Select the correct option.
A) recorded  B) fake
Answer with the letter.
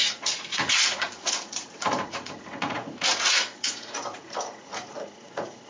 B